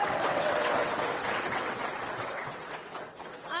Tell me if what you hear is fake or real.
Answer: fake